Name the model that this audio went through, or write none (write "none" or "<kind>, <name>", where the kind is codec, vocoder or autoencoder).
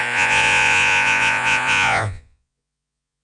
vocoder, Vocos